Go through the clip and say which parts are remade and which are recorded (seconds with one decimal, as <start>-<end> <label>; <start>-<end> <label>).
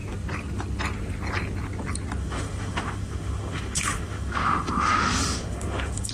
0.0-2.2 recorded; 2.2-6.1 remade